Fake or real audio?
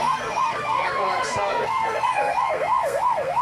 fake